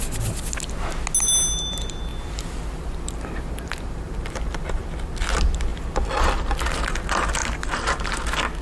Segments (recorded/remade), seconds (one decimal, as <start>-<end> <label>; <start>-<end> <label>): 0.0-2.1 recorded; 2.1-4.9 remade; 4.9-5.7 recorded; 5.7-6.3 remade; 6.3-7.4 recorded; 7.4-8.0 remade; 8.0-8.6 recorded